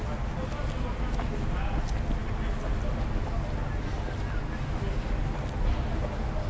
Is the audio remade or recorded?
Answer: recorded